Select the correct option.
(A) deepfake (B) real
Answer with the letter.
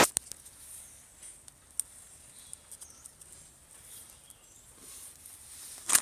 B